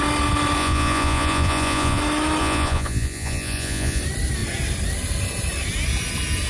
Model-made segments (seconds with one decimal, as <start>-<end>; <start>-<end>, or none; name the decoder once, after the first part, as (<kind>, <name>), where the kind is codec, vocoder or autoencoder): 0.6-2.0 (vocoder, Vocos); 2.4-4.0